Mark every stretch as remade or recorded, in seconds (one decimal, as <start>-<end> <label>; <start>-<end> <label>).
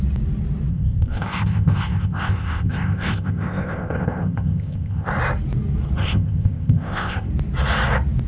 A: 0.0-0.7 recorded; 0.7-5.1 remade; 5.1-6.0 recorded; 6.0-7.3 remade; 7.3-8.3 recorded